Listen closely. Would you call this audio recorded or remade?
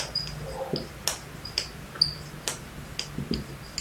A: recorded